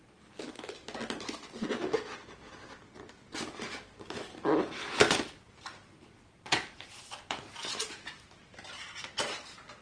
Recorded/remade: recorded